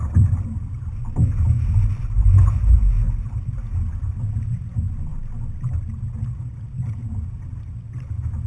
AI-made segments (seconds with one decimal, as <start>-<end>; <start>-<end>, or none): 2.2-2.8